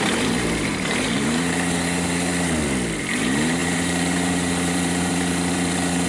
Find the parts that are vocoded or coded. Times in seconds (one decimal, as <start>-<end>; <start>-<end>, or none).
0.0-2.3; 3.0-6.1